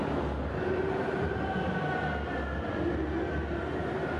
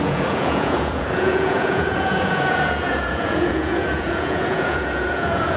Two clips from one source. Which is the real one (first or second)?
first